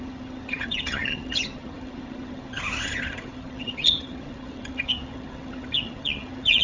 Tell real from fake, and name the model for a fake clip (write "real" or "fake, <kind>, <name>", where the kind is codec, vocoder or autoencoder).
fake, vocoder, HiFi-GAN